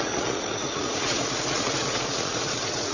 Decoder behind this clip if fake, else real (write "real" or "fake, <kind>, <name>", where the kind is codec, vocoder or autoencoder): fake, vocoder, Vocos